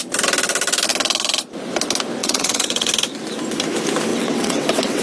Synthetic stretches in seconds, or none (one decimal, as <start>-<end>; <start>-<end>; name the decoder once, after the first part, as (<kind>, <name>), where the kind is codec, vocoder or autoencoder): 2.2-2.9 (vocoder, WaveNeXt); 4.1-5.0